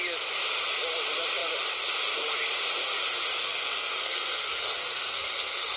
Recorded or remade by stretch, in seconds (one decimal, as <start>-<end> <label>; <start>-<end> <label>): 0.0-3.4 recorded; 3.4-5.8 remade